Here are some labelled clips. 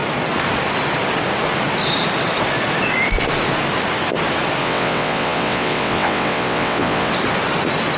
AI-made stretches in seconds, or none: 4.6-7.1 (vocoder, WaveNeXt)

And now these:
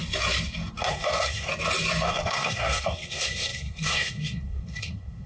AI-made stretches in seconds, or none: 0.9-1.5 (codec, SNAC); 2.1-5.3